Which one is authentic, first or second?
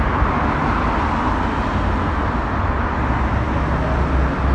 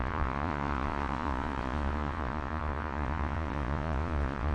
first